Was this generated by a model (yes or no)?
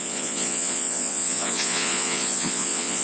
yes